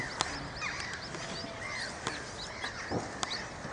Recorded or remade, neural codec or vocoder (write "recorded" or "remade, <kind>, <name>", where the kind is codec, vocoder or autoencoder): recorded